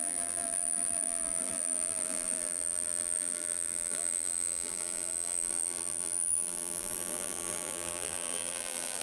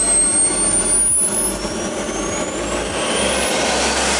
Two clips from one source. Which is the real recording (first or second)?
second